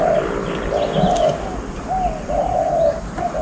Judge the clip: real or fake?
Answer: real